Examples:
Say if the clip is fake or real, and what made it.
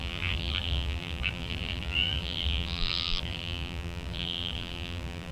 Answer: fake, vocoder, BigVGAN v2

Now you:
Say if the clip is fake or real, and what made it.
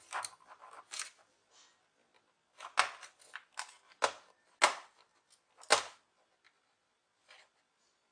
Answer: real